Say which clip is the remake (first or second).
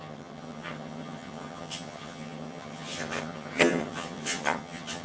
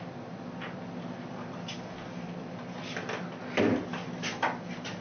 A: first